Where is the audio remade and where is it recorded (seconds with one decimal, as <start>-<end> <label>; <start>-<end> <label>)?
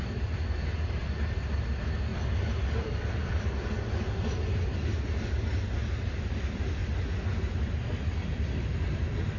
0.0-9.4 recorded